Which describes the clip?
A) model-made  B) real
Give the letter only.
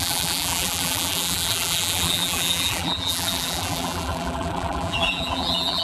A